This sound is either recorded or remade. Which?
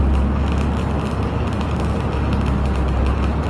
recorded